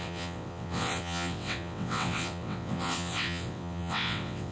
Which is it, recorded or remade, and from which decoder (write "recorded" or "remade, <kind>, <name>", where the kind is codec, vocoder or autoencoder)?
remade, vocoder, WaveNeXt